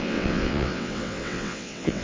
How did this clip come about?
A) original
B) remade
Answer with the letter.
B